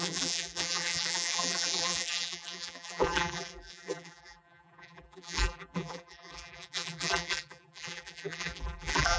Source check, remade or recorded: remade